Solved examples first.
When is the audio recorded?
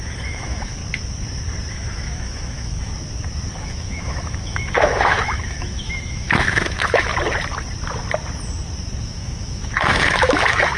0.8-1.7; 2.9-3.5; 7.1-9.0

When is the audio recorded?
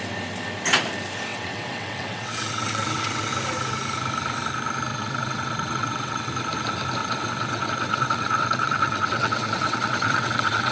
0.0-1.3; 3.3-4.9; 6.3-7.0